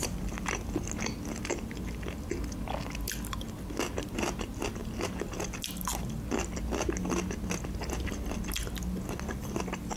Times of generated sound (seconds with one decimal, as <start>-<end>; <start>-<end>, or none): none